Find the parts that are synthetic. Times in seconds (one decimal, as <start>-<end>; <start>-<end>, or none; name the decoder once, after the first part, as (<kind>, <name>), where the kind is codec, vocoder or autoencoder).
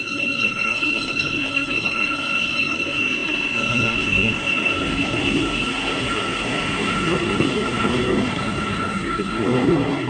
0.0-10.1 (codec, SNAC)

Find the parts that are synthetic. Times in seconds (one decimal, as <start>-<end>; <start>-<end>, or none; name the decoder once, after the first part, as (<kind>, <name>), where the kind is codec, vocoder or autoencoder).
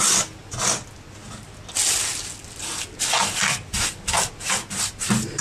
none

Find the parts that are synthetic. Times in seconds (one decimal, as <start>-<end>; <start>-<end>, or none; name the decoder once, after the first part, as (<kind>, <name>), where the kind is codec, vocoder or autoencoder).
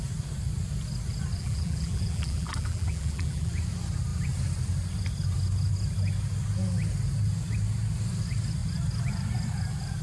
1.4-3.5 (vocoder, BigVGAN v2)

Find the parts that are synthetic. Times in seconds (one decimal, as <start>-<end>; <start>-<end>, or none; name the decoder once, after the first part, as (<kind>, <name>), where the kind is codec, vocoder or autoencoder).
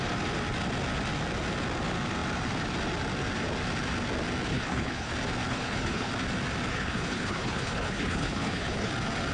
4.5-5.1 (codec, HILCodec); 5.5-6.1; 6.7-8.9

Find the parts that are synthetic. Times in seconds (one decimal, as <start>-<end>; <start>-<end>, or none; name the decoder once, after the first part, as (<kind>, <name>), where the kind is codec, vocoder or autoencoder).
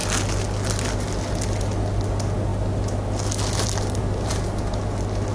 none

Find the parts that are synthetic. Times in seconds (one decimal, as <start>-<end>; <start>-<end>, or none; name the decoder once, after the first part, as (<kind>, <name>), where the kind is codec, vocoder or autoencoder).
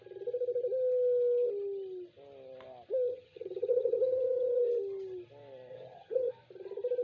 3.1-4.6 (vocoder, HiFi-GAN); 5.7-6.3